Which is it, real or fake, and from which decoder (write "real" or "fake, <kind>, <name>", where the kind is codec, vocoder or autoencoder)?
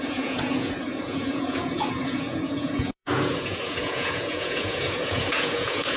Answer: fake, vocoder, Vocos